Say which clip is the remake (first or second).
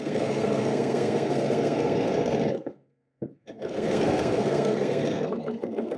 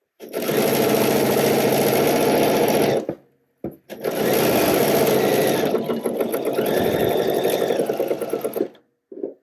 first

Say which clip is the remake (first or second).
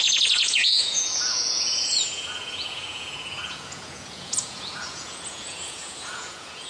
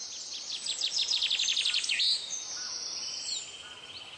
first